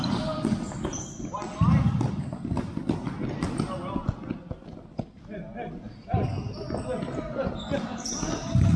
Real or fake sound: real